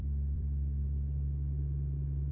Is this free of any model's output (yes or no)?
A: no